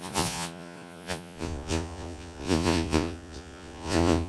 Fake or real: fake